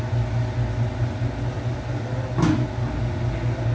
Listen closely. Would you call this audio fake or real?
real